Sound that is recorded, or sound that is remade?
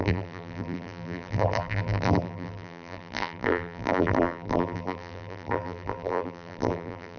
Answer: remade